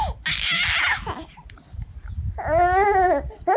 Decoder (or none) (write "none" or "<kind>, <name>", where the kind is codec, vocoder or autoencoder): none